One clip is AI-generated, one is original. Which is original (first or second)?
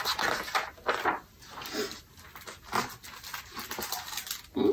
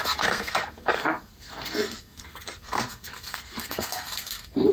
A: first